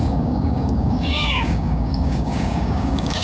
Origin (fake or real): fake